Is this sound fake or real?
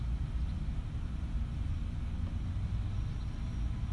real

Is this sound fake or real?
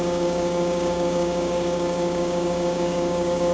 fake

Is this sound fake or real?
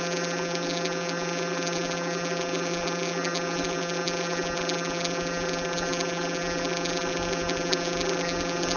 fake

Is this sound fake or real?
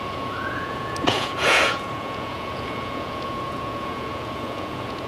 fake